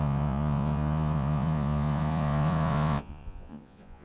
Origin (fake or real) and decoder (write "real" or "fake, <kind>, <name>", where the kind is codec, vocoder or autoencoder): fake, vocoder, Vocos